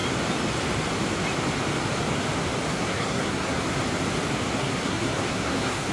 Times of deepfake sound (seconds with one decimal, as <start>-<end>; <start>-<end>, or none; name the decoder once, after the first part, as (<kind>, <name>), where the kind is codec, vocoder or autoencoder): 2.7-3.6 (codec, SNAC); 4.6-5.9